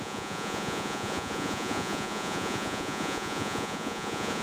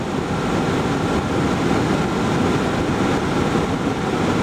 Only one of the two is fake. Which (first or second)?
first